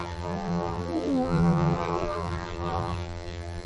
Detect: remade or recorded remade